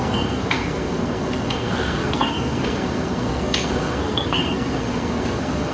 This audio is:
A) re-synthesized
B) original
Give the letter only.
A